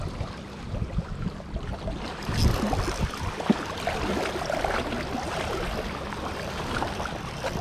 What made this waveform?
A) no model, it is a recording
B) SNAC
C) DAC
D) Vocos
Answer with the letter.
A